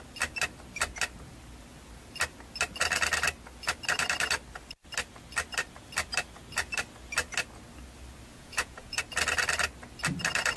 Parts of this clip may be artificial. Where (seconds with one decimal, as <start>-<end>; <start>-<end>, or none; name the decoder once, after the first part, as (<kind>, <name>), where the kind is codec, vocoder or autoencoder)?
8.3-9.0 (vocoder, Vocos)